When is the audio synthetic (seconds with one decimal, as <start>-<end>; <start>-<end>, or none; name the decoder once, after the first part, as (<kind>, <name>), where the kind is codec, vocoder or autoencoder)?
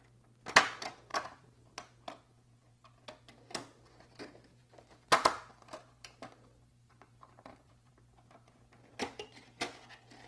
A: 1.1-1.7 (vocoder, BigVGAN v2); 4.5-7.9